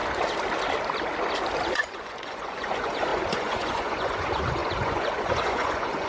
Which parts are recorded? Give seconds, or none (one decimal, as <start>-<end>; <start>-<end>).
0.0-1.7